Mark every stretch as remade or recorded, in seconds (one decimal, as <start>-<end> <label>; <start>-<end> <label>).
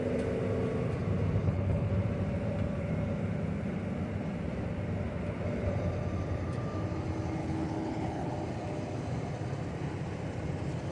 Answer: 0.0-1.4 recorded; 1.4-1.9 remade; 1.9-7.4 recorded; 7.4-8.3 remade; 8.3-10.9 recorded